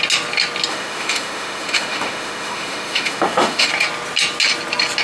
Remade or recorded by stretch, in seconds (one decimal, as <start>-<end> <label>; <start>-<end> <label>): 0.0-0.7 recorded; 0.7-3.7 remade; 3.7-5.0 recorded